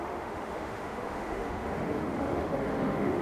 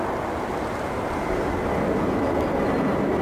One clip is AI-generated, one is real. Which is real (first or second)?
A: second